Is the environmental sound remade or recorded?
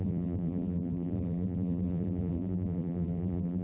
remade